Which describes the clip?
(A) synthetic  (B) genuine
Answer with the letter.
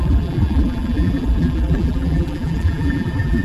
A